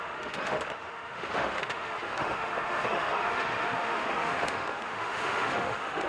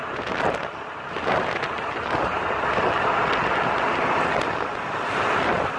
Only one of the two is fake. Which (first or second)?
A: first